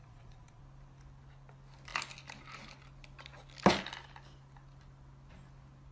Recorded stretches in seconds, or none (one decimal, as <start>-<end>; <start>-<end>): 0.6-5.9

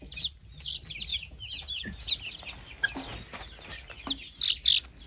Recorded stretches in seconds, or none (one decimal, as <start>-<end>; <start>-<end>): 0.0-1.1; 2.1-5.1

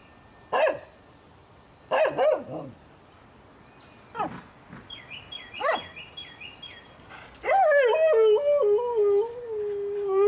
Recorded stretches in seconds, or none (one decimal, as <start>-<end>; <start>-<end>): 0.0-10.3

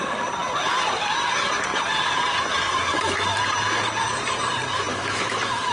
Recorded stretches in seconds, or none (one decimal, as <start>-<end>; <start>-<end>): 0.0-2.9; 3.4-4.9

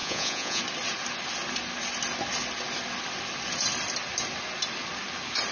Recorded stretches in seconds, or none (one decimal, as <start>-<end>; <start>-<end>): 0.6-5.5

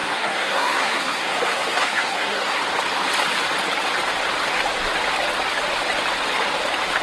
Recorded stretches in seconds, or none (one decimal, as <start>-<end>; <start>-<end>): 2.6-7.0

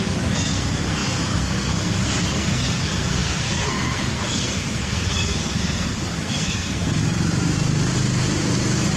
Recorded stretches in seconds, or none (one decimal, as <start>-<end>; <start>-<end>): 7.0-9.0